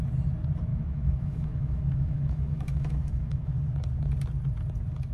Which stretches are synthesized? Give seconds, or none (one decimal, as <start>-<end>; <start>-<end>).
0.7-3.5